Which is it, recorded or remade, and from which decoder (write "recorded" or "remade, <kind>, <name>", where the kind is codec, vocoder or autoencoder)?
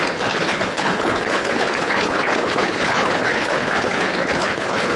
remade, codec, HILCodec